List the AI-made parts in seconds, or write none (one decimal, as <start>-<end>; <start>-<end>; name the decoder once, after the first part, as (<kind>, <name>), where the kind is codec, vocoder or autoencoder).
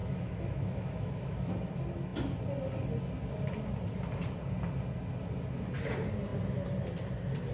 0.0-1.5 (autoencoder, DAC-VAE)